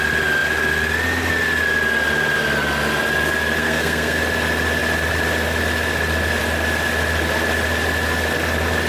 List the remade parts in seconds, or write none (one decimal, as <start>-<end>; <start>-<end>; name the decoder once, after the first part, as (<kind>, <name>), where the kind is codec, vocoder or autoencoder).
3.6-4.2 (codec, SNAC)